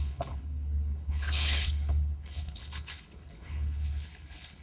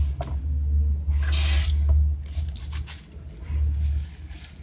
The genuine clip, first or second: second